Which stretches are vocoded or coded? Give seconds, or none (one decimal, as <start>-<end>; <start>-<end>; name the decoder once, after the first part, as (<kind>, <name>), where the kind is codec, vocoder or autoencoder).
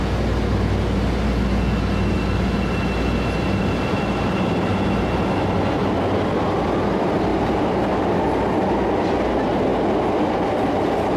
7.3-7.9 (vocoder, BigVGAN v2); 9.7-11.2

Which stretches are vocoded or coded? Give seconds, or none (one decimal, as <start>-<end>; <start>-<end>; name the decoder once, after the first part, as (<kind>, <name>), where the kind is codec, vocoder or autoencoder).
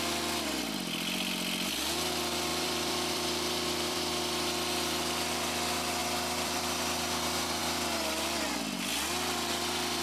2.5-4.1 (vocoder, BigVGAN v2); 6.0-7.6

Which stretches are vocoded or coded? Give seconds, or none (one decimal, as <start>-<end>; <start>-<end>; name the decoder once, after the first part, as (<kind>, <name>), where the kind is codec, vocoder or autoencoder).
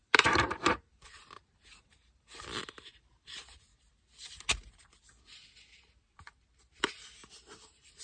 0.0-3.7 (vocoder, BigVGAN v2); 6.9-8.0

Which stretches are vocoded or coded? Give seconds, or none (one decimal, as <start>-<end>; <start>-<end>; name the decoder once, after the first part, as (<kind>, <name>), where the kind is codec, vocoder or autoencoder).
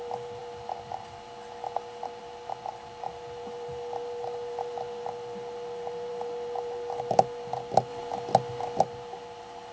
0.0-0.4 (vocoder, BigVGAN v2); 2.2-7.9; 8.8-9.7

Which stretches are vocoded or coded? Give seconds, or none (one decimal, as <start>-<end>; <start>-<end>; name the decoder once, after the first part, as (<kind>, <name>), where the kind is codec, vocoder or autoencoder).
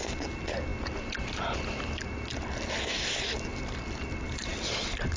0.7-2.7 (vocoder, BigVGAN v2); 3.5-4.8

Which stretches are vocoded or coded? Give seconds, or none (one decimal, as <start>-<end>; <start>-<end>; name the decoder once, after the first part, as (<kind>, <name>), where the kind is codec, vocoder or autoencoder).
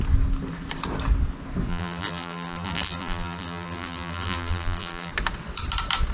1.7-5.1 (vocoder, BigVGAN v2)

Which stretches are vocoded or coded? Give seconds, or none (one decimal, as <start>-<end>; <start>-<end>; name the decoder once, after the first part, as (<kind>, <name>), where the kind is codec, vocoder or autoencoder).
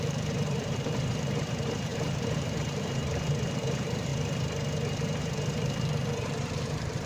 0.0-4.1 (vocoder, BigVGAN v2); 5.2-7.1